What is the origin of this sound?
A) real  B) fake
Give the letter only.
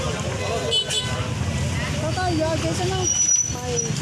A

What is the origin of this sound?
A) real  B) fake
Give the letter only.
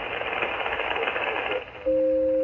A